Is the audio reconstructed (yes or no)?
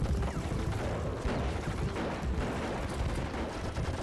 no